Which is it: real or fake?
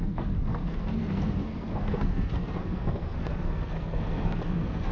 fake